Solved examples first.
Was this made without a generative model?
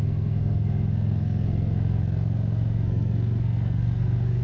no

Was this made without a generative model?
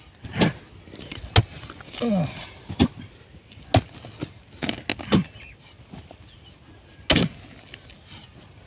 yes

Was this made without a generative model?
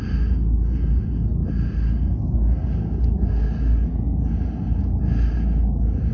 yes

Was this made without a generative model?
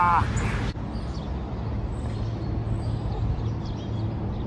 yes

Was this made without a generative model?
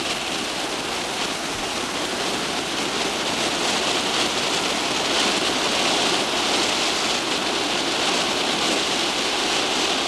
yes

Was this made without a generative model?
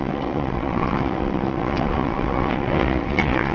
no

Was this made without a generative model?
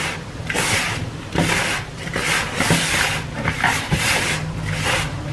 yes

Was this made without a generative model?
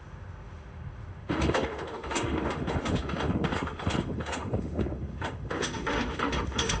no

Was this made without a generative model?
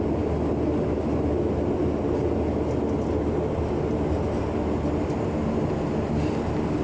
yes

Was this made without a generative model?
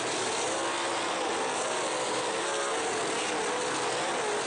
yes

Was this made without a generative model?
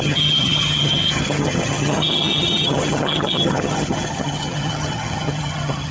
no